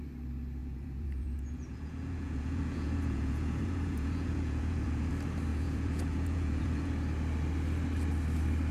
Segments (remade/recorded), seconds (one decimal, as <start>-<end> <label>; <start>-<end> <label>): 0.0-0.6 recorded; 0.6-5.1 remade; 5.1-5.5 recorded; 5.5-6.9 remade; 6.9-8.7 recorded